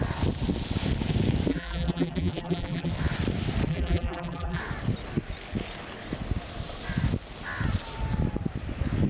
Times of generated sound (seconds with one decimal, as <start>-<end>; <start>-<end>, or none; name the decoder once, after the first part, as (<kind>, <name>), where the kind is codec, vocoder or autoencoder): 1.5-2.9 (vocoder, BigVGAN v2); 3.7-4.6